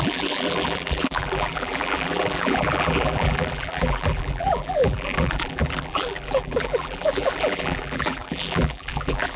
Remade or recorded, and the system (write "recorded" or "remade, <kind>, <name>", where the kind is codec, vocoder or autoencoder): remade, vocoder, BigVGAN v2